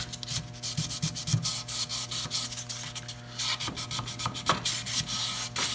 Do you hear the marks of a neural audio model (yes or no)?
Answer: no